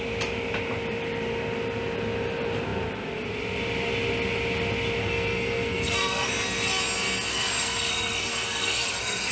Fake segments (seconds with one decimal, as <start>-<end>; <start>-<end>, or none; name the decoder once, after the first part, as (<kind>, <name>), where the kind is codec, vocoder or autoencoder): 5.0-6.3 (codec, SNAC); 7.3-9.3